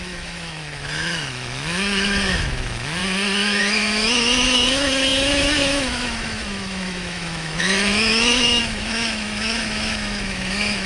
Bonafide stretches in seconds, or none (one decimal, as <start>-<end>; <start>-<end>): 3.0-3.6